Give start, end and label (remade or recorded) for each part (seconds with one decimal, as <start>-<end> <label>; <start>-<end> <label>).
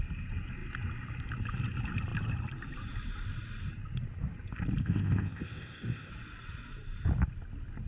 0.0-4.8 recorded; 4.8-6.1 remade; 6.1-7.9 recorded